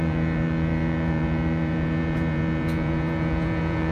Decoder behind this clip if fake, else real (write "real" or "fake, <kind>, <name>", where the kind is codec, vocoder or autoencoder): fake, vocoder, Vocos